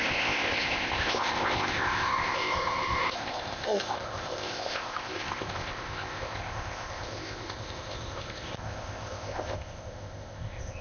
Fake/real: fake